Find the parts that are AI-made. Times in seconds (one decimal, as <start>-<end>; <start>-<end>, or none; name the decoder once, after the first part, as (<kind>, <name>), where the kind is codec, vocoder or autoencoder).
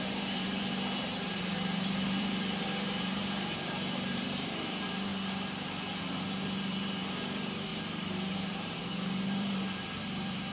0.0-5.1 (vocoder, BigVGAN v2); 6.0-7.7; 8.3-10.5